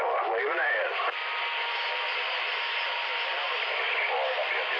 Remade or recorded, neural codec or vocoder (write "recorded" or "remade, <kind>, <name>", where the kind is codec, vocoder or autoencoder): recorded